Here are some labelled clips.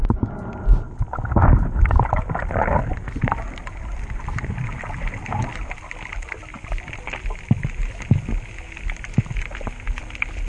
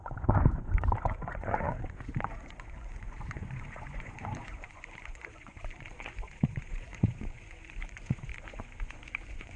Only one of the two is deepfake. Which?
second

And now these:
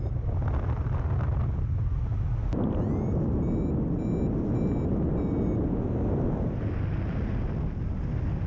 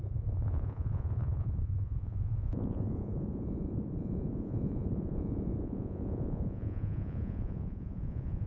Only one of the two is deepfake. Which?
second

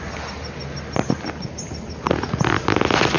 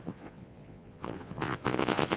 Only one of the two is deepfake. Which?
second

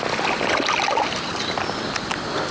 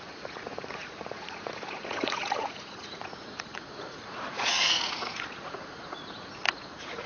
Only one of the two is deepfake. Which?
second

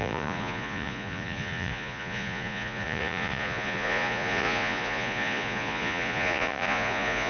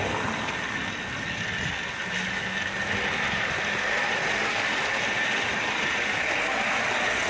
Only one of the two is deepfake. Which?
first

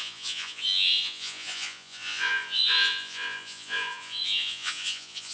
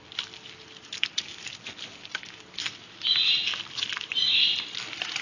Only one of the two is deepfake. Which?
first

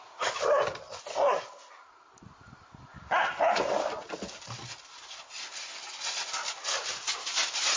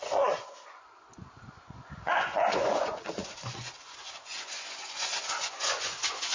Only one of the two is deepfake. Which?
second